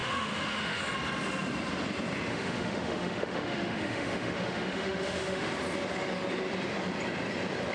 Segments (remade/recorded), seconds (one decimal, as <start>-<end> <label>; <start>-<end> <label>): 0.0-0.8 remade; 0.8-2.3 recorded; 2.3-5.5 remade; 5.5-7.7 recorded